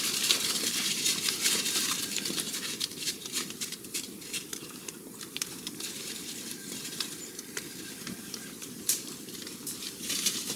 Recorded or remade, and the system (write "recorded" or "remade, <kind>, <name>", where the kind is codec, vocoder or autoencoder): remade, vocoder, BigVGAN v2